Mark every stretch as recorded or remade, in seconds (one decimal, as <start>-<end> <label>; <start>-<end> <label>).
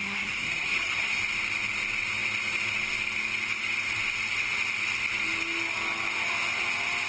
0.0-1.2 remade; 1.2-7.1 recorded